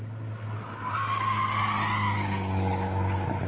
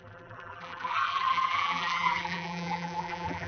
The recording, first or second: first